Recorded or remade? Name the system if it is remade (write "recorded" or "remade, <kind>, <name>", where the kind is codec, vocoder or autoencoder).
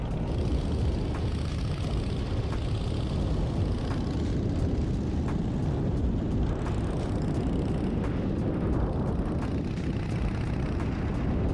recorded